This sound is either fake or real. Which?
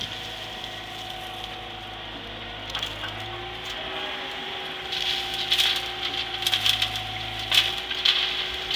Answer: real